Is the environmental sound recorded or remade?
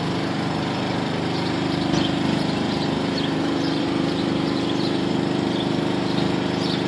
remade